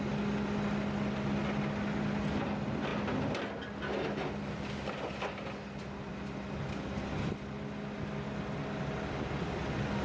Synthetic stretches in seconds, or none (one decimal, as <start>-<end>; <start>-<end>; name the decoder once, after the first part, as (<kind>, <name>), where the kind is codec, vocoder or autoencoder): none